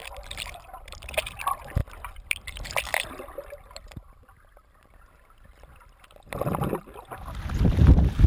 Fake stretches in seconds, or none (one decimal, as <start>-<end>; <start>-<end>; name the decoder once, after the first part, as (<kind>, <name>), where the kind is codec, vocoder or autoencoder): 0.0-1.4 (vocoder, BigVGAN v2); 1.8-6.8